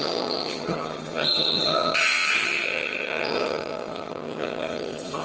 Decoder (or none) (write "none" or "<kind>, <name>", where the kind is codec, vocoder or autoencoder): vocoder, HiFi-GAN